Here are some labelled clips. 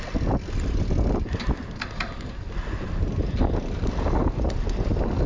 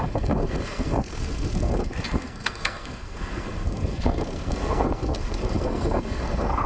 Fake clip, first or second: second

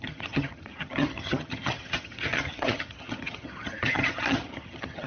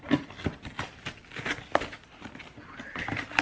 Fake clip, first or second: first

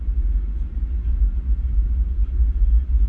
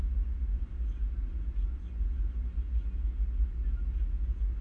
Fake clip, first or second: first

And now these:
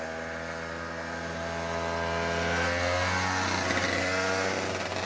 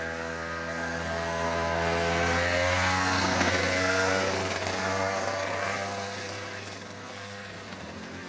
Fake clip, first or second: second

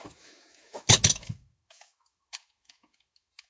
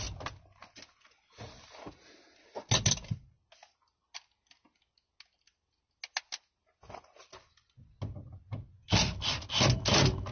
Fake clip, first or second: first